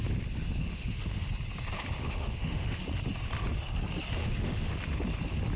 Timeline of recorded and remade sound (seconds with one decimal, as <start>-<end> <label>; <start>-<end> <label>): 0.0-0.6 recorded; 0.6-1.3 remade; 1.3-2.0 recorded; 2.0-2.8 remade; 2.8-4.2 recorded; 4.2-4.8 remade; 4.8-5.6 recorded